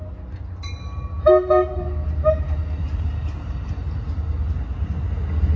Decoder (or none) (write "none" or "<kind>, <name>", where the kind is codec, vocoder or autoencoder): none